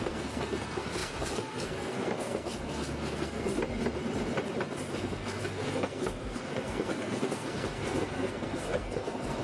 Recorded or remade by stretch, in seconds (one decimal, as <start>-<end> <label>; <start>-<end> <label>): 0.0-3.5 remade; 3.5-4.9 recorded; 4.9-9.4 remade